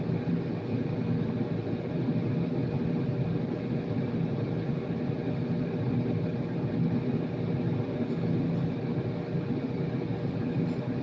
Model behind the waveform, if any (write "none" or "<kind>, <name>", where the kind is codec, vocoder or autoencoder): none